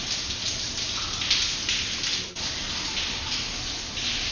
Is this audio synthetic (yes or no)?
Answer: no